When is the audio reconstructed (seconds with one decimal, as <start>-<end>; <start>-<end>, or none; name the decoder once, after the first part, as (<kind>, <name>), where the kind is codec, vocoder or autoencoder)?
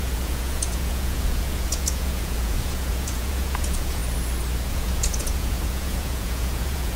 0.0-4.0 (vocoder, Vocos); 4.7-7.0